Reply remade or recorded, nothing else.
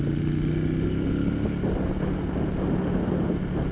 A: recorded